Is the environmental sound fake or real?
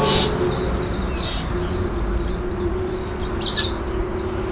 real